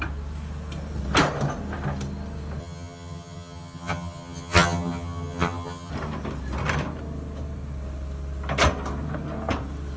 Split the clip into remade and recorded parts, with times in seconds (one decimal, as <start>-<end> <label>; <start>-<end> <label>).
0.0-2.6 recorded; 2.6-5.9 remade; 5.9-10.0 recorded